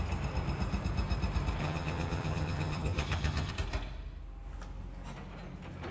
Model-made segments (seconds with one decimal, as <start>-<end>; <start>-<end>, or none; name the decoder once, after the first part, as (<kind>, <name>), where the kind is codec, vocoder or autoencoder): 1.6-3.5 (vocoder, HiFi-GAN)